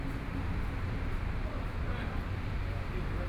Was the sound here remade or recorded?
recorded